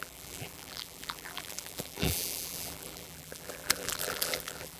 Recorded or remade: remade